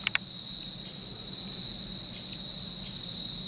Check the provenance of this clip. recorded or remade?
recorded